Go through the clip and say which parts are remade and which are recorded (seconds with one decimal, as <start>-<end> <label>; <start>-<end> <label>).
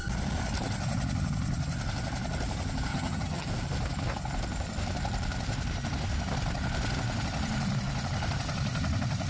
0.0-2.9 recorded; 2.9-3.5 remade; 3.5-9.3 recorded